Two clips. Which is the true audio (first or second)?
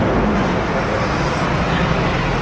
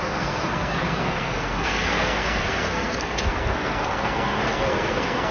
first